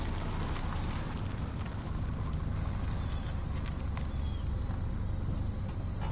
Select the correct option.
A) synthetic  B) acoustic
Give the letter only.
B